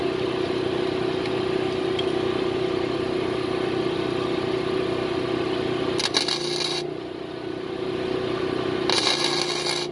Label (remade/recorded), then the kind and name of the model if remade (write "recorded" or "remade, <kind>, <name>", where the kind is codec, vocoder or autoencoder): recorded